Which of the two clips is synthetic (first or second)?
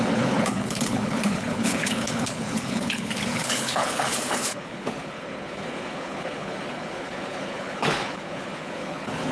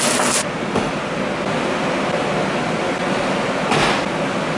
first